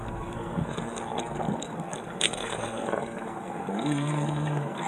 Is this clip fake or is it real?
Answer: fake